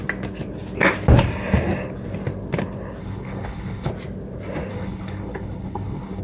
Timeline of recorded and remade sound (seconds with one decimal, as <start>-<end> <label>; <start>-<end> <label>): 0.0-3.0 recorded; 3.0-3.9 remade; 3.9-4.7 recorded; 4.7-6.2 remade